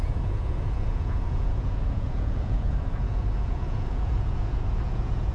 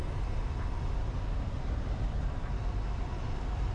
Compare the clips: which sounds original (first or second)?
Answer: second